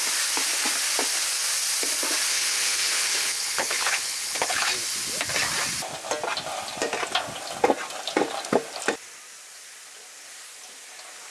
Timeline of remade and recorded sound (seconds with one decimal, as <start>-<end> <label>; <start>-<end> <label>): 0.0-2.3 recorded; 2.3-4.7 remade; 4.7-11.3 recorded